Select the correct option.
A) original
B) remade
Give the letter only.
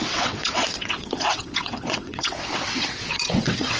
B